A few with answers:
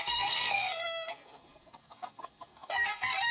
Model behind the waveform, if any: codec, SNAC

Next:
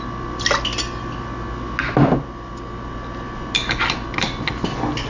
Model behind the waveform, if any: none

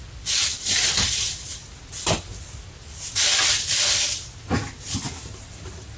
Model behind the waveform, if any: none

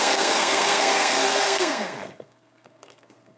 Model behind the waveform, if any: codec, SNAC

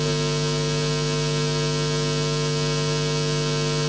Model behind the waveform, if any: none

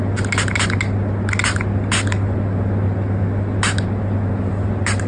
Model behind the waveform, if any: none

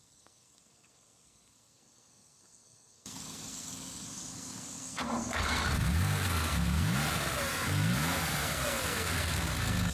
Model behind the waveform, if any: codec, SNAC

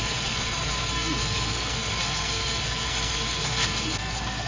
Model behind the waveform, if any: codec, SNAC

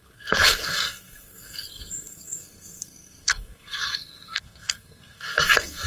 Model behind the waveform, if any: codec, SNAC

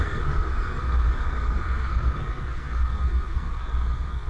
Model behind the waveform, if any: codec, SNAC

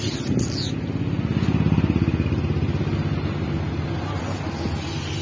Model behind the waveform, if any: none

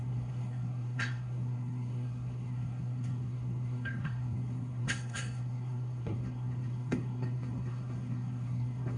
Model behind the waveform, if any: codec, SNAC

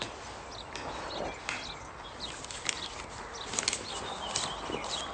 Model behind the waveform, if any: none